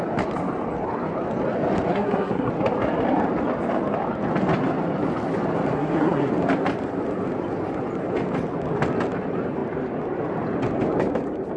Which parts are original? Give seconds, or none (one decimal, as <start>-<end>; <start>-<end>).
0.0-1.9; 2.5-5.7; 6.3-11.6